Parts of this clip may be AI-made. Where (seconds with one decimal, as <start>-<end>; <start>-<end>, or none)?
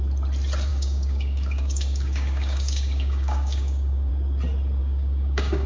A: 0.7-4.1; 4.8-5.7